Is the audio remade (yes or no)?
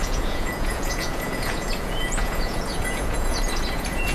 yes